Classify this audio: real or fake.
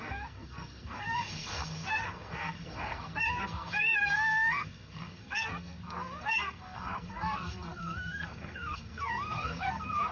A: fake